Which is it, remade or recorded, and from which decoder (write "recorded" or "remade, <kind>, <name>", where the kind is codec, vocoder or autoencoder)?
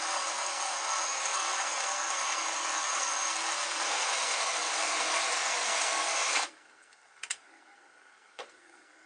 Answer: remade, codec, SNAC